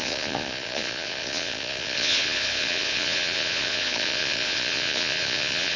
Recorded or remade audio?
remade